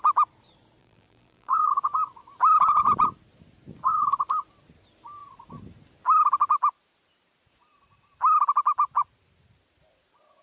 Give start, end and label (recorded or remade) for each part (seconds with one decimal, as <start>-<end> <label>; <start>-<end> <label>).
0.0-0.8 recorded; 0.8-1.7 remade; 1.7-10.4 recorded